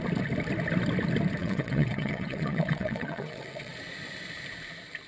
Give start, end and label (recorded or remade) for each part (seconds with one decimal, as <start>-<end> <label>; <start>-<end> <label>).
0.0-1.4 recorded; 1.4-3.7 remade; 3.7-5.1 recorded